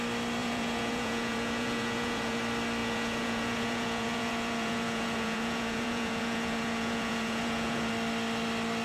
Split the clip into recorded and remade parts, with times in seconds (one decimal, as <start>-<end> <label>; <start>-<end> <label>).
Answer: 0.0-0.4 recorded; 0.4-2.4 remade; 2.4-2.8 recorded; 2.8-7.9 remade; 7.9-8.8 recorded